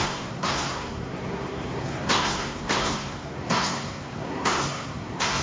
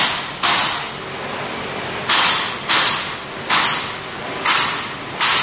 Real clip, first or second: second